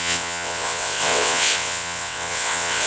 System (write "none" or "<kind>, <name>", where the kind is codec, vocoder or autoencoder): vocoder, WaveNeXt